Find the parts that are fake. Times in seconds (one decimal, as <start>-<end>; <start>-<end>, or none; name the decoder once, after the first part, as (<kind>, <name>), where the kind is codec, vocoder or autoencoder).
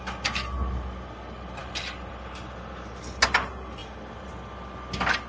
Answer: none